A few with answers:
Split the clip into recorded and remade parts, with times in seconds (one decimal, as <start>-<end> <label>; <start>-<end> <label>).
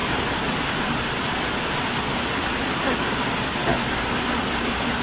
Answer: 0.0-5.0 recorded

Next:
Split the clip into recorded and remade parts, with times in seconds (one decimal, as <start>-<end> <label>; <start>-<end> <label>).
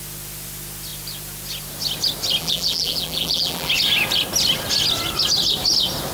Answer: 0.0-2.4 recorded; 2.4-3.7 remade; 3.7-6.1 recorded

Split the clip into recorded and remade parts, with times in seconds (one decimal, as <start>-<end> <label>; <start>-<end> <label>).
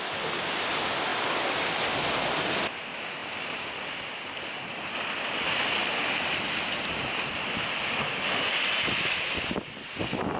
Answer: 0.0-1.1 recorded; 1.1-2.4 remade; 2.4-3.2 recorded; 3.2-8.4 remade; 8.4-10.4 recorded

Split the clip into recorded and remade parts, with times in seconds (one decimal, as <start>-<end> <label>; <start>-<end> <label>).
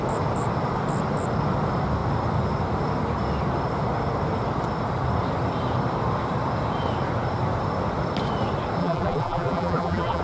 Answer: 0.0-8.8 recorded; 8.8-10.2 remade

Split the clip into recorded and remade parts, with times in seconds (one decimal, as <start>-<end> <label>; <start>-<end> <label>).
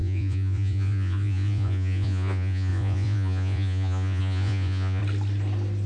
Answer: 0.0-5.0 remade; 5.0-5.9 recorded